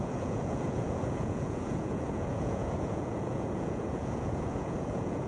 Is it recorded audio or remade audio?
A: remade